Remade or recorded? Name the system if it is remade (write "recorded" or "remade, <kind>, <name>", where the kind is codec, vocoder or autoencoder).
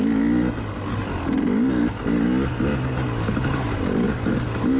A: recorded